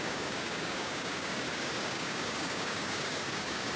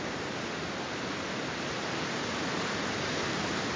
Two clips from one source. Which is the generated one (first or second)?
first